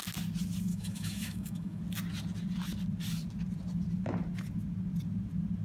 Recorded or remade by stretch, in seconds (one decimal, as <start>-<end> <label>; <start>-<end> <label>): 0.0-0.7 recorded; 0.7-1.8 remade; 1.8-5.6 recorded